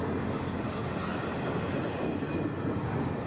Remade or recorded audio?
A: recorded